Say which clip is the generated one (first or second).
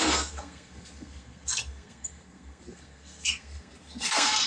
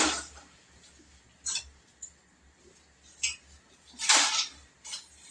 first